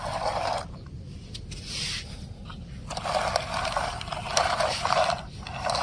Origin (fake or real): real